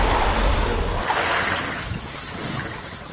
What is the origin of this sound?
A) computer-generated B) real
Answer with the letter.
B